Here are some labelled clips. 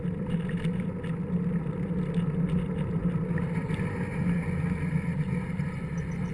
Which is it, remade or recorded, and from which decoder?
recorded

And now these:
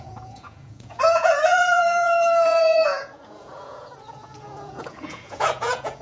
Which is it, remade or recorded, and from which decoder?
remade, vocoder, Vocos